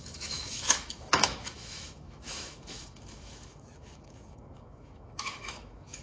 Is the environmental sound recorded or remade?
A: remade